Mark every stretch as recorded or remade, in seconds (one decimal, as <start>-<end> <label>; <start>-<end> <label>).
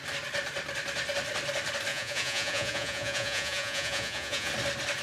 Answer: 0.0-1.9 recorded; 1.9-4.5 remade; 4.5-5.0 recorded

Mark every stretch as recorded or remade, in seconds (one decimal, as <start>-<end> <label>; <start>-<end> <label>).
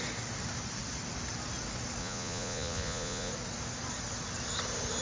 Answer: 0.0-2.0 recorded; 2.0-3.3 remade; 3.3-5.0 recorded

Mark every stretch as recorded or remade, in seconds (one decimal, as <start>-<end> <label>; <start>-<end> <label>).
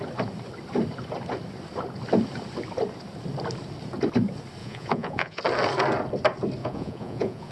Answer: 0.0-4.6 recorded; 4.6-5.4 remade; 5.4-6.6 recorded; 6.6-7.5 remade